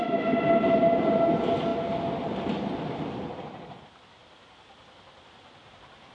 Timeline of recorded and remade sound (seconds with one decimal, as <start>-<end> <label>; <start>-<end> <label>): 0.0-6.1 recorded